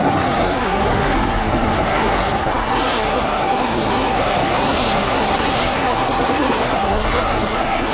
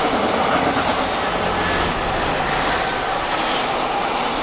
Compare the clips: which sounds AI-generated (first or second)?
first